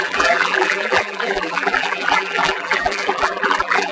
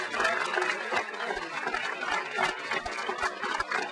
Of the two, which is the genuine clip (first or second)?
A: second